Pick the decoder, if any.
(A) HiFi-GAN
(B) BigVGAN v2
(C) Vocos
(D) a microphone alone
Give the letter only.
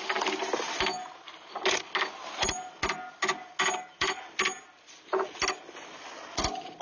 D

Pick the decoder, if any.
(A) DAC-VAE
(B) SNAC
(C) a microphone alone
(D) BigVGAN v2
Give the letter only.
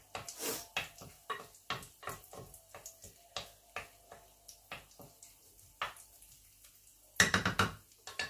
C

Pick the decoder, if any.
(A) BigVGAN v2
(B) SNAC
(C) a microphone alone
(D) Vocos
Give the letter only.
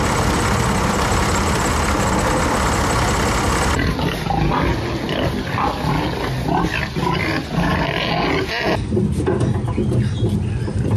C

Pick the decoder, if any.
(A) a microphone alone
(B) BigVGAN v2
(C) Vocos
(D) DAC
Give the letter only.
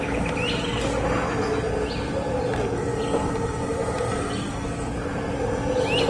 A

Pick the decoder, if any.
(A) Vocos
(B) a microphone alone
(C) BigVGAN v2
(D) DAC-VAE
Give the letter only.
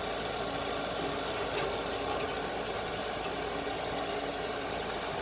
B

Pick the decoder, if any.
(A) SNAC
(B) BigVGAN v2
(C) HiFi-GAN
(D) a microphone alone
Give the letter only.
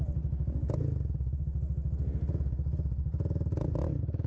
D